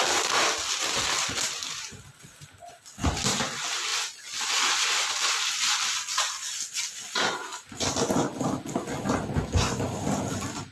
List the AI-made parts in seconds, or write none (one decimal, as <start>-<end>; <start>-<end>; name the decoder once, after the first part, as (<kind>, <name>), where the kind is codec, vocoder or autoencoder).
none